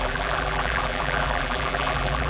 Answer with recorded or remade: remade